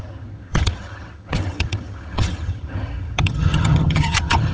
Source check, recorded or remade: remade